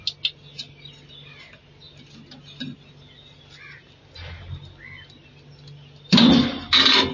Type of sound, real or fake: real